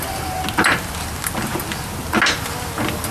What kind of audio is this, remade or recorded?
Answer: recorded